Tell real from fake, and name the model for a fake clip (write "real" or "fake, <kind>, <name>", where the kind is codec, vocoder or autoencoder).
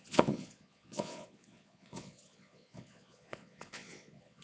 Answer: fake, vocoder, Vocos